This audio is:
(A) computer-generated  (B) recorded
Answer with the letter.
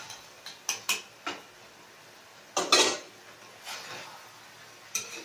B